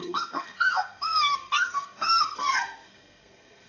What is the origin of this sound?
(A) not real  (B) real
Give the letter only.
A